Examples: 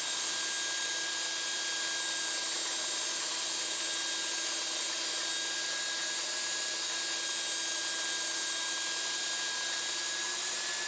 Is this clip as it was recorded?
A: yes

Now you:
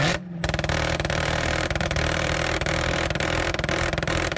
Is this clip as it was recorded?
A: no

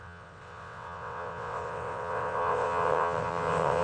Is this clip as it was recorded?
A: no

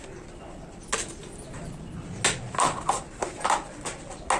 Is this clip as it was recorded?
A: yes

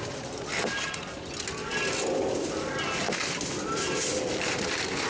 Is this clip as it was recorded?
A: yes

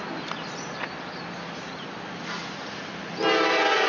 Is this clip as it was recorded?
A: yes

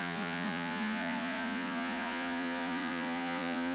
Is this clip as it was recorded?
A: no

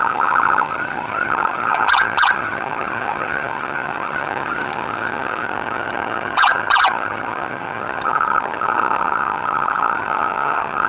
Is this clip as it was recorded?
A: no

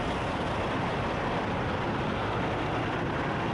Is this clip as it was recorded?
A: yes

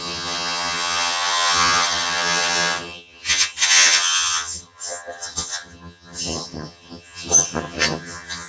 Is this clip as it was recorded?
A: no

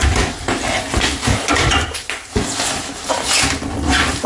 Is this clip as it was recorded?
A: yes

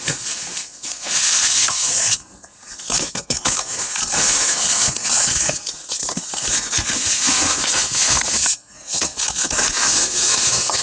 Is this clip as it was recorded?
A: no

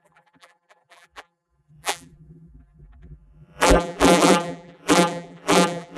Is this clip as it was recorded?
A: no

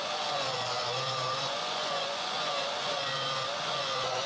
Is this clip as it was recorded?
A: no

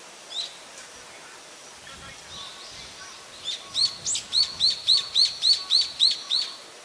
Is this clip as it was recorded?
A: yes